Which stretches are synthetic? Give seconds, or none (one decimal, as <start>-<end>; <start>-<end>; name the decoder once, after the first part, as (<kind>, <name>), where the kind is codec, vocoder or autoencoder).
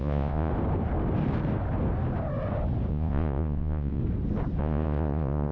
0.0-0.5 (vocoder, Vocos); 2.9-4.0; 4.6-5.5